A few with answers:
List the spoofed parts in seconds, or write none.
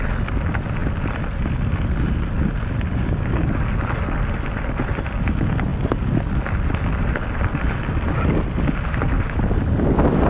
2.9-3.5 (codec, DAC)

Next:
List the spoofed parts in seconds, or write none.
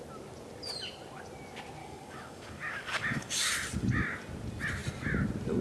1.8-3.3 (codec, DAC)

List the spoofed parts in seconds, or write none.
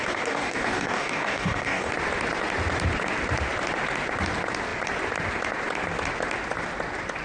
0.0-1.9 (codec, DAC)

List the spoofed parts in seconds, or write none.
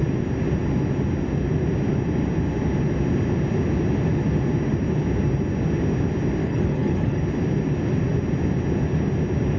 6.4-7.2 (codec, DAC)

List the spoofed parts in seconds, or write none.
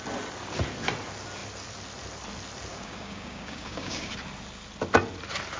2.7-4.1 (codec, DAC)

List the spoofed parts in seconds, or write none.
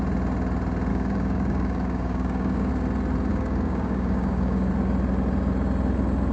0.9-2.7 (codec, DAC); 3.3-4.7